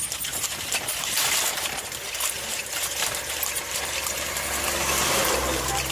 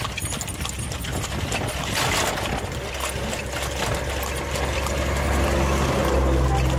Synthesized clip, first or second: first